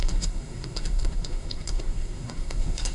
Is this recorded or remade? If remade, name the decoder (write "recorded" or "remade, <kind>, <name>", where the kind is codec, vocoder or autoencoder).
remade, codec, SNAC